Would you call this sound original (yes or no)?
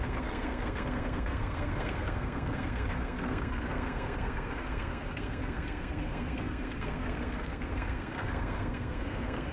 no